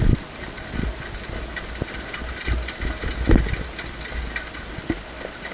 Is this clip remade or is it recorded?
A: recorded